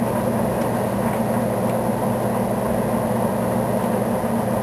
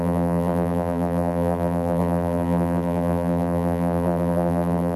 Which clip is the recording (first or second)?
first